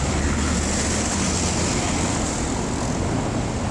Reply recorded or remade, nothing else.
recorded